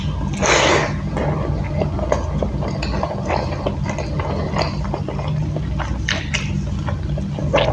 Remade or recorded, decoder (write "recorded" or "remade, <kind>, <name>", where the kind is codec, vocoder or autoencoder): recorded